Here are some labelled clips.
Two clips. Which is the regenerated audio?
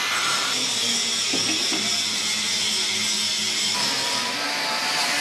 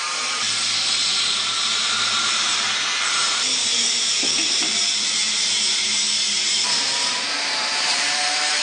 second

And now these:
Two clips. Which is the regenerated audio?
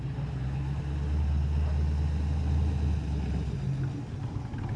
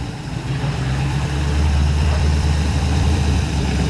second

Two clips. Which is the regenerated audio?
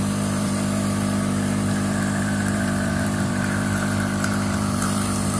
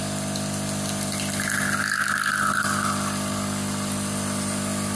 first